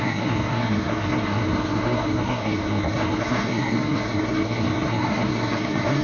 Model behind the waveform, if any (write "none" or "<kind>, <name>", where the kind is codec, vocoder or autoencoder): codec, SNAC